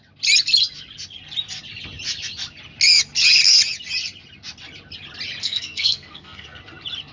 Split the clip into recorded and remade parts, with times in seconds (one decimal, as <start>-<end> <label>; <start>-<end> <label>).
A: 0.0-5.4 recorded; 5.4-6.6 remade; 6.6-7.1 recorded